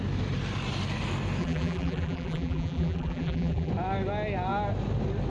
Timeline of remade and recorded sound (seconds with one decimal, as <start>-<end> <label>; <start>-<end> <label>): 0.0-1.4 recorded; 1.4-3.7 remade; 3.7-5.3 recorded